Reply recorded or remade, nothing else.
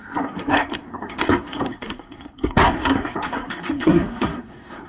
remade